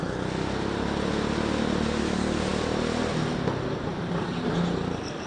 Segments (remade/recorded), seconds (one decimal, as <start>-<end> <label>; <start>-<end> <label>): 0.0-5.3 recorded